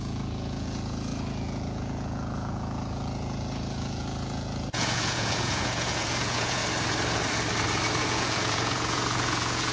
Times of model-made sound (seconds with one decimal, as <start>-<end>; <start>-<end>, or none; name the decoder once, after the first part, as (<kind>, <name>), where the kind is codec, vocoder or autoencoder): 0.0-6.6 (vocoder, Vocos); 8.0-9.7